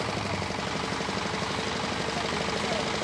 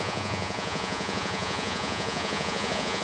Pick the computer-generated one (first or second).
second